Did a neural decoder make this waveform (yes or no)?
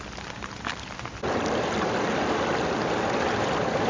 yes